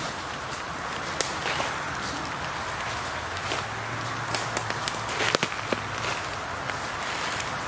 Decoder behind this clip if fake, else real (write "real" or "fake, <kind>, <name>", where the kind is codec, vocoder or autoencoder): real